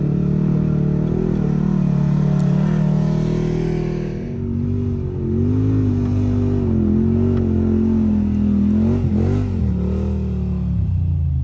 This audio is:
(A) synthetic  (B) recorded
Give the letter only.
B